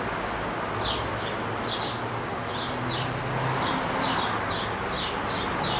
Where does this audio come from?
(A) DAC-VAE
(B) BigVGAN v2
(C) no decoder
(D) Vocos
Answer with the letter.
C